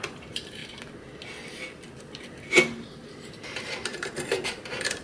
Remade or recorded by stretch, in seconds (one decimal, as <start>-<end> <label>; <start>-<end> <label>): 0.0-0.6 remade; 0.6-3.6 recorded; 3.6-5.0 remade